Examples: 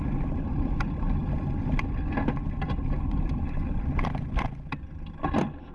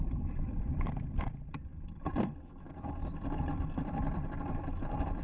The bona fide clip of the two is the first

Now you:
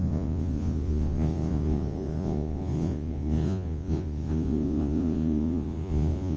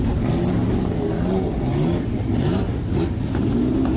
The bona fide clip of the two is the second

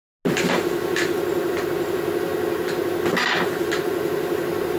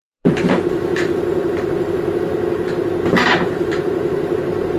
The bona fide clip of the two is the first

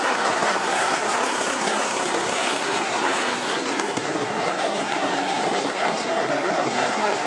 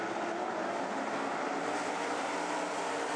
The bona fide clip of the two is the second